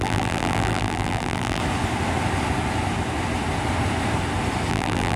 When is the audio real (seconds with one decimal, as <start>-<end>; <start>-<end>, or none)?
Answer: 1.6-4.7